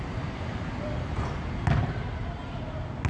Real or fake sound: real